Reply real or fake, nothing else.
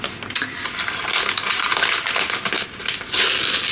real